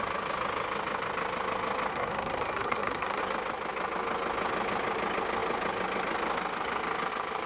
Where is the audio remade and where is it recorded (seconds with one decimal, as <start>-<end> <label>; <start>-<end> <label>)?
0.0-1.9 recorded; 1.9-3.2 remade; 3.2-7.5 recorded